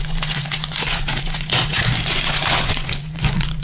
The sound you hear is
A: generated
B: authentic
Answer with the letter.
A